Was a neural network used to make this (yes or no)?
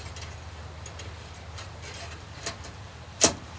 no